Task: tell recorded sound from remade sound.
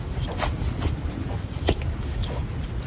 recorded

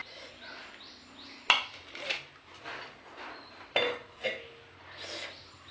recorded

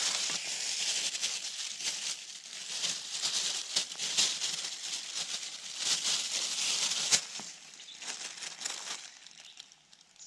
recorded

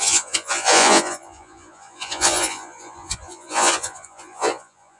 remade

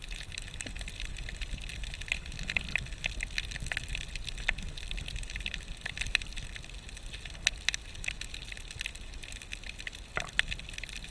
recorded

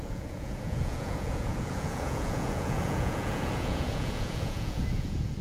remade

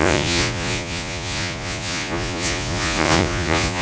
remade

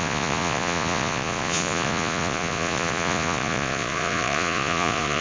remade